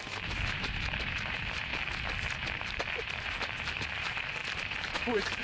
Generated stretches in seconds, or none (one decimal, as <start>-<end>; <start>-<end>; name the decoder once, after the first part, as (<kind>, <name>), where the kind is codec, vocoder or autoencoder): 0.0-1.7 (vocoder, BigVGAN v2); 3.0-5.4